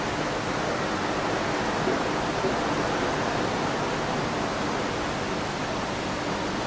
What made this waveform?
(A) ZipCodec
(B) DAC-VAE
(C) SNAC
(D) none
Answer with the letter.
D